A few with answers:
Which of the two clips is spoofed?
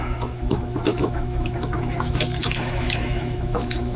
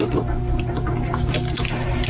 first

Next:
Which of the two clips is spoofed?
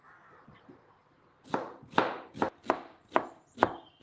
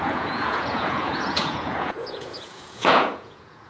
second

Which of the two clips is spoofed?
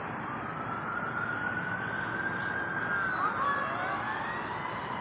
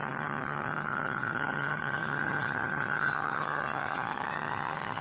second